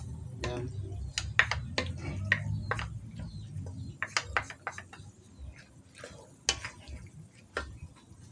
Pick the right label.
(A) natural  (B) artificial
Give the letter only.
A